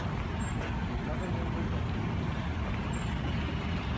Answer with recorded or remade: recorded